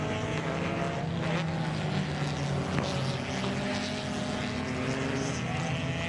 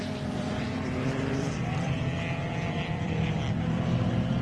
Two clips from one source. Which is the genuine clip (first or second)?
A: first